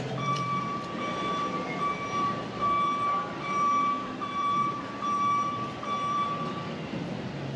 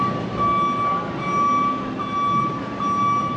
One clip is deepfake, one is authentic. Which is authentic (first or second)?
second